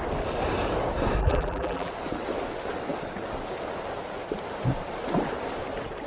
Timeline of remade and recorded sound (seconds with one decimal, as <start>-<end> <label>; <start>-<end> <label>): 0.0-1.2 recorded; 1.2-1.9 remade; 1.9-6.1 recorded